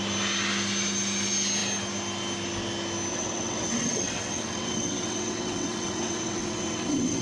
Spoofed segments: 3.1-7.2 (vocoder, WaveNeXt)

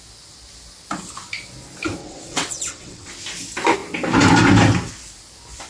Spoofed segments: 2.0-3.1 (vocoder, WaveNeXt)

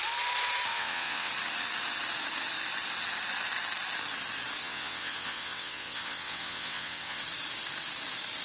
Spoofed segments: 0.7-1.3 (vocoder, WaveNeXt); 4.6-7.2

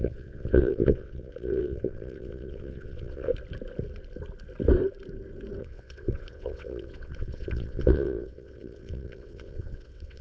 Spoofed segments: 0.0-3.3 (vocoder, WaveNeXt); 5.6-10.2

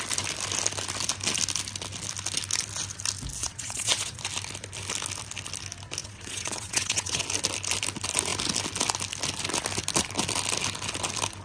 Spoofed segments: 3.4-4.2 (vocoder, WaveNeXt); 6.0-7.2

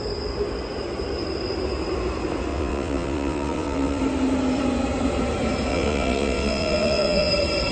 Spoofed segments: 2.5-4.0 (vocoder, WaveNeXt); 5.7-7.3